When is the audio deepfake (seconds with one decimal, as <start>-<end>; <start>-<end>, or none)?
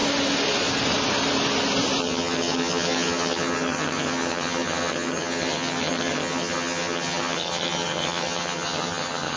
2.0-9.4